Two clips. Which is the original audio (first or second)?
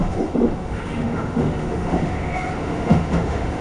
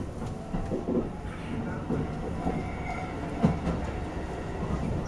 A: second